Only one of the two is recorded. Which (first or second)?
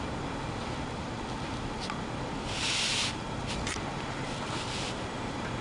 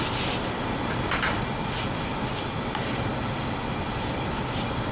first